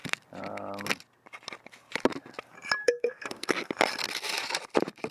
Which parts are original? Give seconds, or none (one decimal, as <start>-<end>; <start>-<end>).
0.0-2.8; 3.7-5.1